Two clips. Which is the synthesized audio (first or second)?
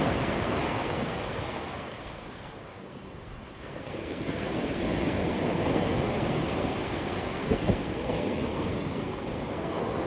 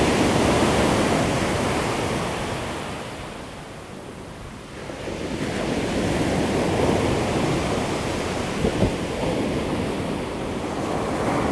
first